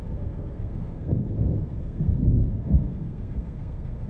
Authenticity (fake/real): fake